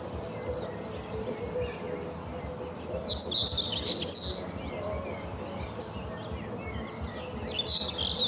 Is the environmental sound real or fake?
real